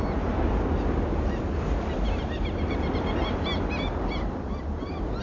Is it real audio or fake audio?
real